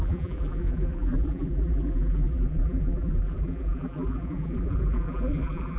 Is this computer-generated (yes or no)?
yes